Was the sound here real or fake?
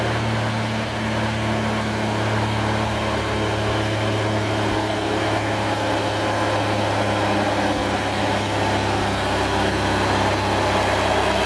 real